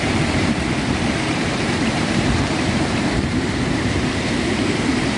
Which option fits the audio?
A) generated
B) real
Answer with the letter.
A